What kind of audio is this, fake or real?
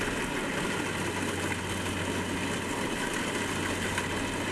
real